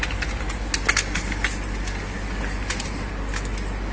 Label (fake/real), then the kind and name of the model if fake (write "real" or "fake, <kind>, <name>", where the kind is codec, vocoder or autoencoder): real